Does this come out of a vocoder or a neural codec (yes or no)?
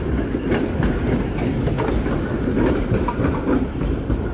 no